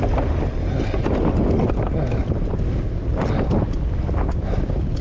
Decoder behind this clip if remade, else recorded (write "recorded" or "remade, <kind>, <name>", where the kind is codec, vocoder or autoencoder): recorded